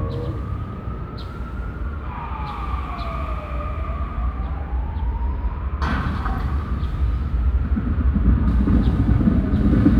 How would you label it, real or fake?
real